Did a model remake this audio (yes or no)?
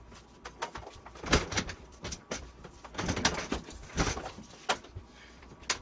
no